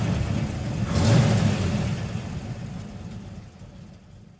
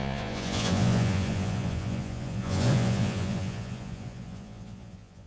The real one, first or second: first